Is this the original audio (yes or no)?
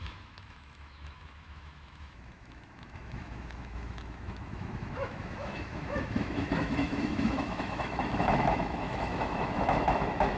no